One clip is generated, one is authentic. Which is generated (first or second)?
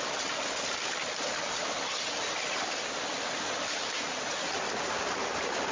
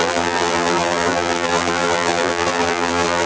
second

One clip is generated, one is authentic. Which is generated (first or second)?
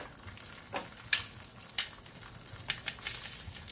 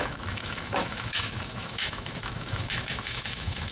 second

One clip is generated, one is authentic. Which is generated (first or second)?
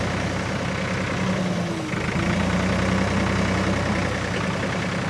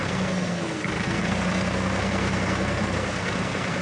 second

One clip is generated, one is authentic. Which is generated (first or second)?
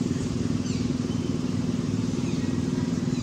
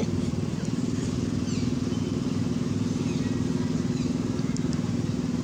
first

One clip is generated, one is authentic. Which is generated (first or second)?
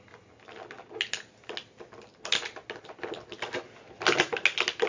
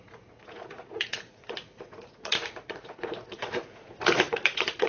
second